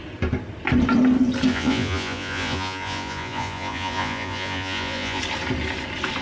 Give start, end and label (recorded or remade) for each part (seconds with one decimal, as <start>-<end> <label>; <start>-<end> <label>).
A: 0.0-1.5 recorded; 1.5-5.2 remade; 5.2-6.2 recorded

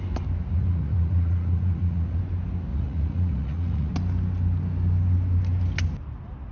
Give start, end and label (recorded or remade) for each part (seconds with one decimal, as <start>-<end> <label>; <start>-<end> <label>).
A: 0.0-0.5 recorded; 0.5-2.2 remade; 2.2-2.7 recorded; 2.7-3.9 remade; 3.9-6.5 recorded

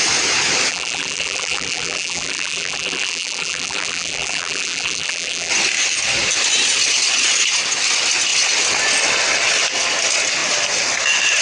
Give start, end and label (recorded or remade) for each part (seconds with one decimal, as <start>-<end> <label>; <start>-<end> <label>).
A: 0.0-0.7 recorded; 0.7-5.5 remade; 5.5-11.4 recorded

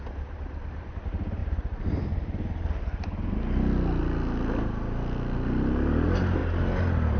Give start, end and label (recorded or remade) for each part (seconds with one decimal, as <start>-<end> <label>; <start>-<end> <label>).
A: 0.0-7.2 recorded